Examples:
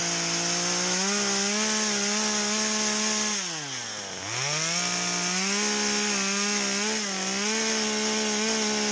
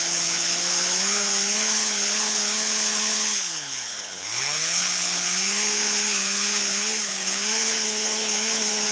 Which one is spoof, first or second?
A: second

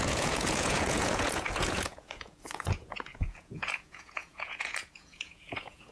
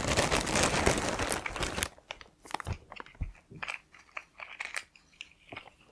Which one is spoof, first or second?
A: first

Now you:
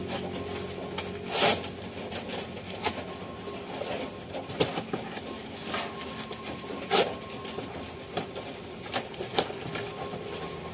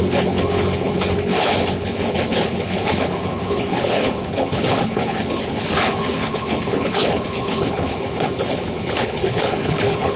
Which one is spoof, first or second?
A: second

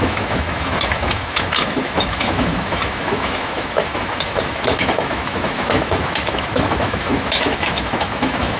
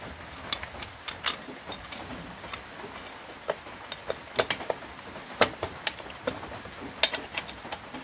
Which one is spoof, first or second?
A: first